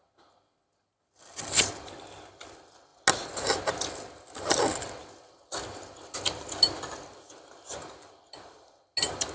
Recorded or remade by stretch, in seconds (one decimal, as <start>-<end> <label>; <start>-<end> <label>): 0.0-9.3 recorded